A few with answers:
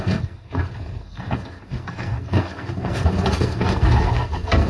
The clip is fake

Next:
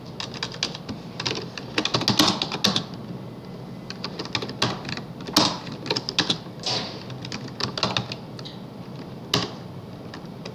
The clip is real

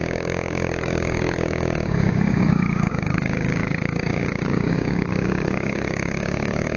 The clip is fake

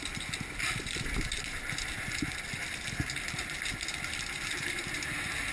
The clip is real